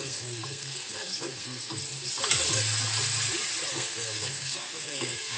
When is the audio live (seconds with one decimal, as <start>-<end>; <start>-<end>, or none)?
1.8-3.7